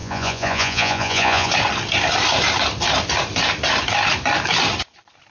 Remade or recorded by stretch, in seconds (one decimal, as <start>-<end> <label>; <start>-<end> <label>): 0.0-1.5 remade; 1.5-5.3 recorded